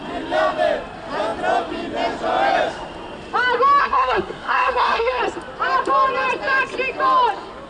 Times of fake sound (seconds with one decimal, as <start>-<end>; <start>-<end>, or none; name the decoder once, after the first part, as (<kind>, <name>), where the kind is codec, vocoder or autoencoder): 3.8-5.2 (codec, SNAC)